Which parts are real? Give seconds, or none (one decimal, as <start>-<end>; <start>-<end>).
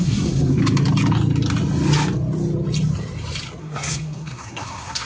0.6-3.6